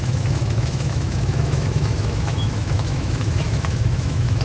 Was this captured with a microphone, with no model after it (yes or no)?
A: no